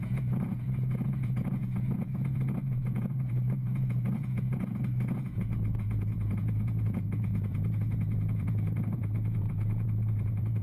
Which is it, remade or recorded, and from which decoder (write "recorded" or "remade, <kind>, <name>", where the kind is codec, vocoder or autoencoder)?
remade, vocoder, Vocos